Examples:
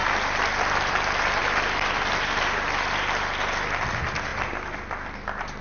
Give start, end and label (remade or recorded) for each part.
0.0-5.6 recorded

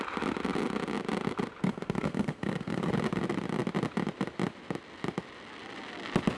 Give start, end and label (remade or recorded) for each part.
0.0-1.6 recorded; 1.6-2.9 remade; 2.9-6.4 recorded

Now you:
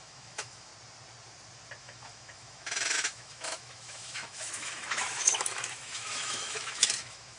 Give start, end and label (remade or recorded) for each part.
0.0-0.7 remade; 0.7-1.8 recorded; 1.8-7.4 remade

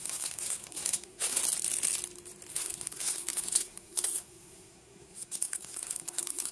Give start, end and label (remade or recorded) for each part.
0.0-1.4 remade; 1.4-2.5 recorded; 2.5-6.5 remade

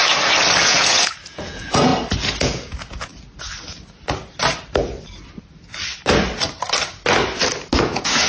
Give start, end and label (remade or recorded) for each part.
0.0-0.6 recorded; 0.6-1.9 remade; 1.9-2.4 recorded; 2.4-3.1 remade; 3.1-7.8 recorded; 7.8-8.3 remade

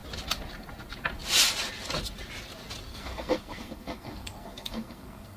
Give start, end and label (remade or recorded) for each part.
0.0-2.9 recorded; 2.9-5.4 remade